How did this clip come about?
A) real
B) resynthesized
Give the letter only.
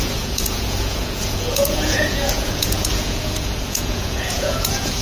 B